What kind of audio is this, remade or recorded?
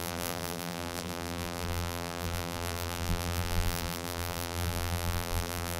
remade